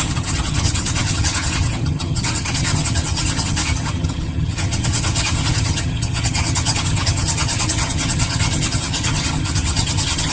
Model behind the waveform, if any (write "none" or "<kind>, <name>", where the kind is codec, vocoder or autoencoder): vocoder, HiFi-GAN